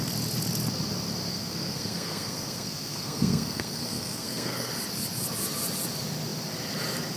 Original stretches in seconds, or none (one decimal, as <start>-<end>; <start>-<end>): 0.0-1.3; 4.7-7.2